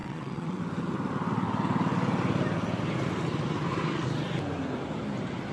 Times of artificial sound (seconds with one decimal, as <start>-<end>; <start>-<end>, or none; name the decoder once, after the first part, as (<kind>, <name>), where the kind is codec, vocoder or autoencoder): 0.0-0.6 (vocoder, WaveNeXt)